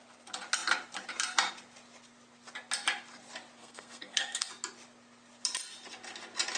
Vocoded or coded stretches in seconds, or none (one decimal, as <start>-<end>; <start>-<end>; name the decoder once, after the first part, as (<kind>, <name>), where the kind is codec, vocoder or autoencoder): 3.6-4.5 (codec, SNAC)

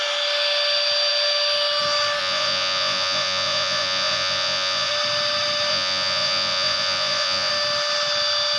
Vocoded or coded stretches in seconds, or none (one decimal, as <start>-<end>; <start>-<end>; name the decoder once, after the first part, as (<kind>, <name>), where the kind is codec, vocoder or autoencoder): 2.2-4.9 (vocoder, Vocos); 5.7-7.5

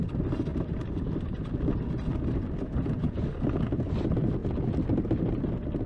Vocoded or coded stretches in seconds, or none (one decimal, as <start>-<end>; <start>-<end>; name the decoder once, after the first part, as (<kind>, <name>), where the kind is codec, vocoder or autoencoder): none

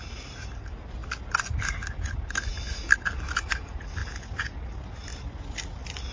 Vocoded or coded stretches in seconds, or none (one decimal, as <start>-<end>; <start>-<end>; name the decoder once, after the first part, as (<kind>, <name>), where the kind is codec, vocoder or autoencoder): none

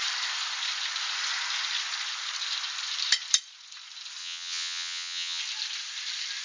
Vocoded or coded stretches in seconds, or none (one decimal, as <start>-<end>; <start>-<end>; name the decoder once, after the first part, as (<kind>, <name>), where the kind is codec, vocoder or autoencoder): 4.2-5.4 (vocoder, WaveNeXt)

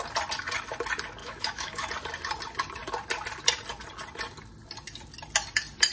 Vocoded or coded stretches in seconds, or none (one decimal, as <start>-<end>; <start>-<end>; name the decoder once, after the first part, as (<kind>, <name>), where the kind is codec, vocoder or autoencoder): 1.2-1.9 (autoencoder, DAC-VAE)

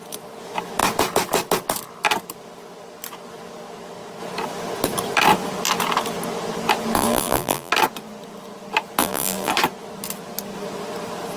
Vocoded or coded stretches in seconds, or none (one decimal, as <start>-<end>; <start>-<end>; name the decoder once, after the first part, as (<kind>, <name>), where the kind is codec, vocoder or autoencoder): 7.0-7.7 (vocoder, BigVGAN v2); 9.0-9.5